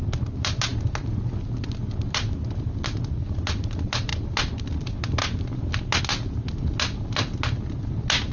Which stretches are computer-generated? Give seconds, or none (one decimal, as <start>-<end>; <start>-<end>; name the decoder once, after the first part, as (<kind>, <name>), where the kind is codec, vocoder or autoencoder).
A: none